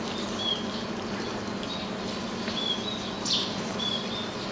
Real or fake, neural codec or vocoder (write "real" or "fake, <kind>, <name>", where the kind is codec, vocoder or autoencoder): real